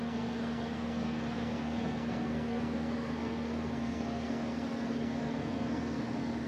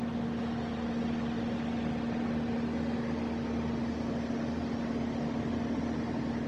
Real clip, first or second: second